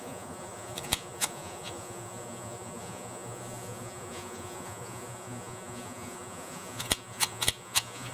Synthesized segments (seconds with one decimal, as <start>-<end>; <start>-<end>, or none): 0.0-8.1